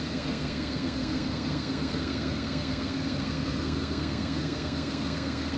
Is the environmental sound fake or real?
fake